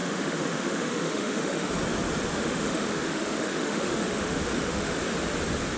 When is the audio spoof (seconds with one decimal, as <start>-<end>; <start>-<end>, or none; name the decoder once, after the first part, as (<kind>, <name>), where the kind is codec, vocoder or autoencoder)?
0.0-1.7 (autoencoder, DAC-VAE); 2.3-4.9